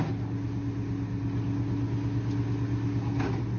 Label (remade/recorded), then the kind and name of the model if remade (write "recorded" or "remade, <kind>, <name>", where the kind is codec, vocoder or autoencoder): recorded